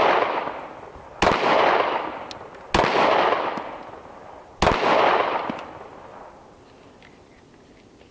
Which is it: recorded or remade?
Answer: recorded